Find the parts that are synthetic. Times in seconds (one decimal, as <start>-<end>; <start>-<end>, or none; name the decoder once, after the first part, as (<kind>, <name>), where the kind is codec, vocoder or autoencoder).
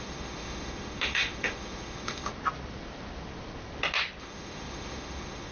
0.0-2.3 (autoencoder, DAC-VAE); 4.2-5.5